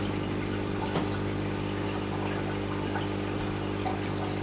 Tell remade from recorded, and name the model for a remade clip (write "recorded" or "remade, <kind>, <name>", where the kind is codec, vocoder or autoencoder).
recorded